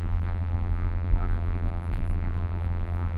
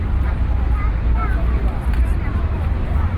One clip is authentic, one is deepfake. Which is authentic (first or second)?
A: second